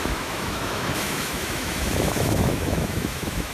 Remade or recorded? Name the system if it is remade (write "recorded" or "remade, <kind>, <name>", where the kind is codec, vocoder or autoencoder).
remade, autoencoder, DAC-VAE